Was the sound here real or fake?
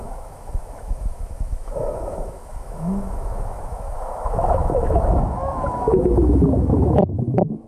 fake